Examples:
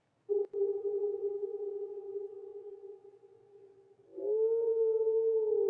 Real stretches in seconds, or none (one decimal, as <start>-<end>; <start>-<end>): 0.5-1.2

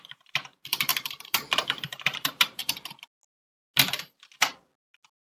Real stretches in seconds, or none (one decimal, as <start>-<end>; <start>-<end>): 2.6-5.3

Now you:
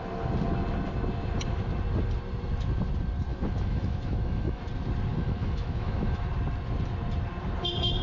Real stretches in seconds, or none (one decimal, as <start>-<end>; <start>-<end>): 0.0-3.3; 4.6-5.1; 6.3-8.0